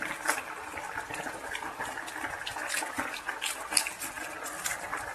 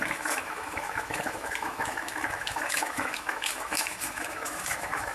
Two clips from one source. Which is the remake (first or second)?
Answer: second